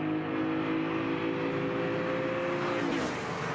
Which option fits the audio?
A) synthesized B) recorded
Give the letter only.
B